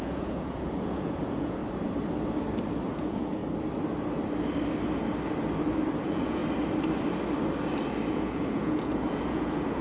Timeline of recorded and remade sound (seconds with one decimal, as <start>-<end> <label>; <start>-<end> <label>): 0.0-1.6 remade; 1.6-2.9 recorded; 2.9-3.4 remade; 3.4-6.0 recorded; 6.0-6.4 remade; 6.4-8.1 recorded; 8.1-9.8 remade